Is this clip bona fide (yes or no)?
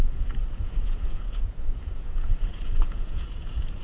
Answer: no